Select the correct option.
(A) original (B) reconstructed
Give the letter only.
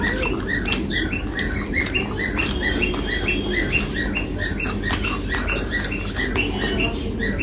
A